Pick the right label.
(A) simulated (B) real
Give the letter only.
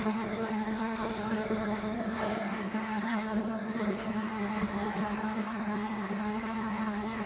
A